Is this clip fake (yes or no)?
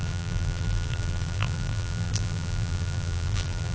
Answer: yes